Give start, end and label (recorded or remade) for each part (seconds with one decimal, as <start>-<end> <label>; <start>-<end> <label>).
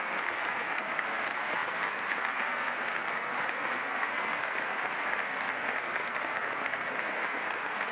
0.0-7.9 remade